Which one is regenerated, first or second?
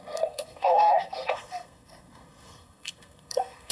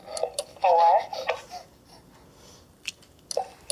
first